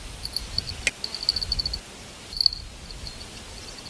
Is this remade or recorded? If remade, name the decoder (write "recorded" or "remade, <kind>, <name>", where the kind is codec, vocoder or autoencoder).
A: recorded